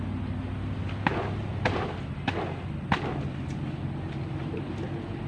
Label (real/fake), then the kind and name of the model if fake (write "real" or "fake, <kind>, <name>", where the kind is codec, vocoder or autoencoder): real